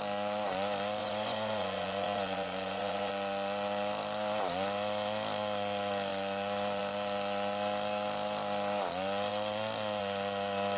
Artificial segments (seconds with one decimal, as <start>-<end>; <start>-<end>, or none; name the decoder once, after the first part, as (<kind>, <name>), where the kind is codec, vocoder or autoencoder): 1.0-3.1 (vocoder, Vocos)